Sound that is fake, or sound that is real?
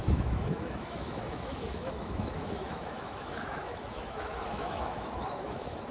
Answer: fake